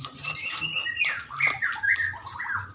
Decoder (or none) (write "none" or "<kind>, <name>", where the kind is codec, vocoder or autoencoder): vocoder, BigVGAN v2